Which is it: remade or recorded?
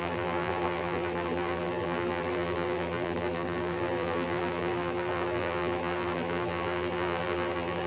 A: remade